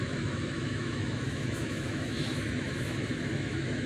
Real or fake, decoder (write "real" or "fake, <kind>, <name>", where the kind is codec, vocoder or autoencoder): fake, autoencoder, DAC-VAE